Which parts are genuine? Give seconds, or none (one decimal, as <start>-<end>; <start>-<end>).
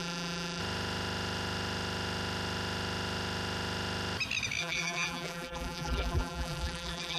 0.6-4.6